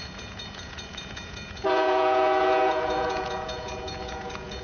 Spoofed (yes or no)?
yes